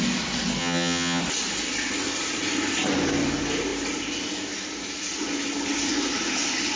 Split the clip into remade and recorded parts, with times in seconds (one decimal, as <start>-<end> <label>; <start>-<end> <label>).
0.0-0.6 recorded; 0.6-1.2 remade; 1.2-6.8 recorded